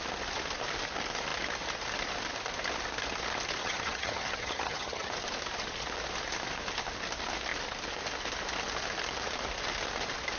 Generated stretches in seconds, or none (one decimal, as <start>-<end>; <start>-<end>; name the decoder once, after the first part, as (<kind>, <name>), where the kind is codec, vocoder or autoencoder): 3.6-5.1 (vocoder, HiFi-GAN)